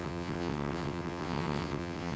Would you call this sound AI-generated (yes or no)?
yes